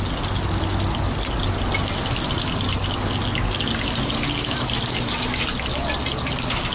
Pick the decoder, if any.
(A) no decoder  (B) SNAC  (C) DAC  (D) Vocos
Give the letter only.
A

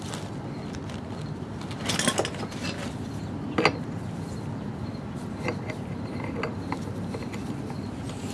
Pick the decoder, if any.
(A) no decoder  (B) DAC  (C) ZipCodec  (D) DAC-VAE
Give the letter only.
A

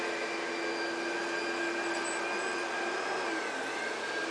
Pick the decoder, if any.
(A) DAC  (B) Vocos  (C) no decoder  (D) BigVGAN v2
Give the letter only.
C